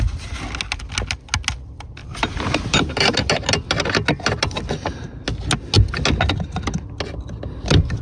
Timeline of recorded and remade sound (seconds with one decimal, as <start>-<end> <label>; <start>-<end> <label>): 0.0-2.0 recorded; 2.0-3.1 remade; 3.1-8.0 recorded